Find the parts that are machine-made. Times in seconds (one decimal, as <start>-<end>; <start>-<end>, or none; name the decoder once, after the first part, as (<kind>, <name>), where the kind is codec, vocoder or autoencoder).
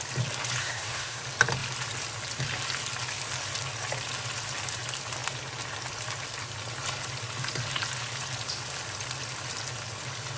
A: 0.6-1.2 (codec, SNAC)